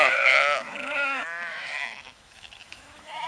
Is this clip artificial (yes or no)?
yes